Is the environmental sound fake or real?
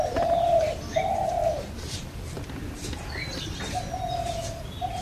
real